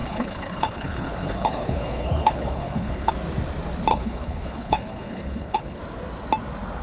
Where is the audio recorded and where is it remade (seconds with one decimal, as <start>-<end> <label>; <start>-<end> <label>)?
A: 0.0-3.1 remade; 3.1-3.9 recorded; 3.9-5.8 remade; 5.8-6.8 recorded